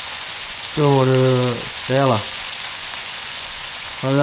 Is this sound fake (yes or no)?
yes